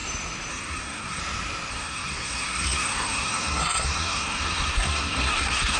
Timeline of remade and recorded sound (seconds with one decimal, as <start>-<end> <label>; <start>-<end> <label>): 0.0-0.5 recorded; 0.5-1.2 remade; 1.2-1.7 recorded; 1.7-5.8 remade